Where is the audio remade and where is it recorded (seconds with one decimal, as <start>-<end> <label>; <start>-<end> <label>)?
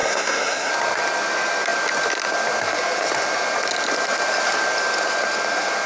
0.0-0.7 remade; 0.7-5.9 recorded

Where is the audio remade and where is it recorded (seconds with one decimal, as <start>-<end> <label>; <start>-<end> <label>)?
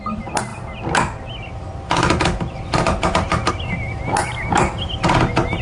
0.0-5.6 recorded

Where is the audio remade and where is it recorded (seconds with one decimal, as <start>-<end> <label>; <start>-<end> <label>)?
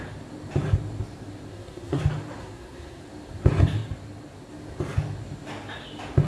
0.0-1.5 recorded; 1.5-2.0 remade; 2.0-2.4 recorded; 2.4-3.0 remade; 3.0-6.3 recorded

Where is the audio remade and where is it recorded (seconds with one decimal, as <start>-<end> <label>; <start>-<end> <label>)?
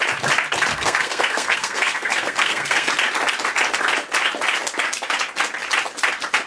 0.0-0.7 recorded; 0.7-2.9 remade; 2.9-6.5 recorded